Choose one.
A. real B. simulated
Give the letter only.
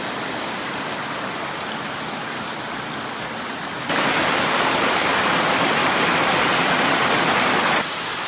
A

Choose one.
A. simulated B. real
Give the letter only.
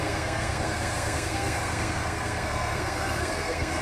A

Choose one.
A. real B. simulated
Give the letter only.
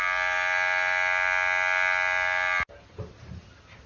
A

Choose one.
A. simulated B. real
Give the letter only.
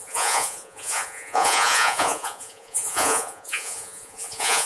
A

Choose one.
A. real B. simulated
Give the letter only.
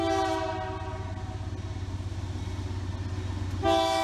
A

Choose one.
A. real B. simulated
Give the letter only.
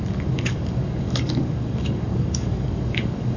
B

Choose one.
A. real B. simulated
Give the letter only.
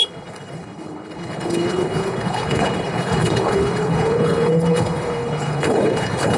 B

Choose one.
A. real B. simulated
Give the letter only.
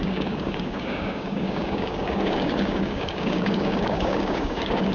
B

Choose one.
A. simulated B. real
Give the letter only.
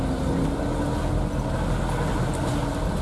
B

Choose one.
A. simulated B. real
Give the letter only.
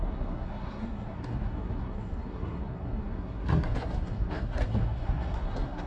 A